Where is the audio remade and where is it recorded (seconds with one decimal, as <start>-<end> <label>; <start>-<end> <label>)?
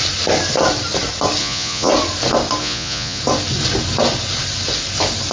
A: 0.0-1.4 recorded; 1.4-1.9 remade; 1.9-2.6 recorded; 2.6-3.2 remade; 3.2-5.3 recorded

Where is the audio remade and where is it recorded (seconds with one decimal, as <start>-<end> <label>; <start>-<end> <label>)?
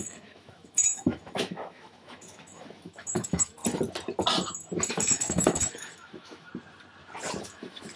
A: 0.0-3.6 remade; 3.6-4.9 recorded; 4.9-6.5 remade; 6.5-7.4 recorded; 7.4-8.0 remade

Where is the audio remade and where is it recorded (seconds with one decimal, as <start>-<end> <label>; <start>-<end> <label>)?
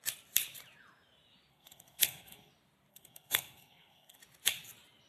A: 0.0-1.5 recorded; 1.5-2.5 remade; 2.5-2.9 recorded; 2.9-4.2 remade; 4.2-5.1 recorded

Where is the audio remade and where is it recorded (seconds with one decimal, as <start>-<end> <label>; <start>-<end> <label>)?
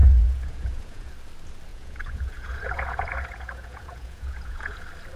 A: 0.0-1.1 remade; 1.1-1.7 recorded; 1.7-4.8 remade; 4.8-5.2 recorded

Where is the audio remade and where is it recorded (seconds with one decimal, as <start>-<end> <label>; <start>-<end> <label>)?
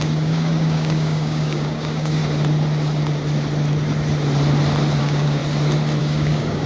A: 0.0-2.2 remade; 2.2-5.0 recorded; 5.0-5.4 remade; 5.4-6.0 recorded; 6.0-6.7 remade